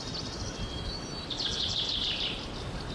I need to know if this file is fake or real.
real